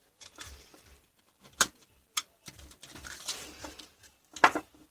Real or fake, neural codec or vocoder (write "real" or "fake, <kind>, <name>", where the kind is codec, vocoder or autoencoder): fake, vocoder, BigVGAN v2